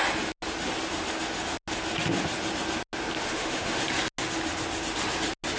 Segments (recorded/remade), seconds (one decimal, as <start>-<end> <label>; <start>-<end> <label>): 0.0-3.2 recorded; 3.2-3.8 remade; 3.8-5.6 recorded